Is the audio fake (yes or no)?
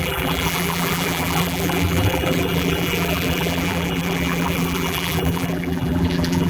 yes